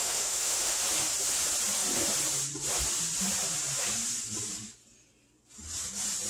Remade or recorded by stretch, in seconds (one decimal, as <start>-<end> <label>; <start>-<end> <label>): 0.0-0.8 remade; 0.8-6.3 recorded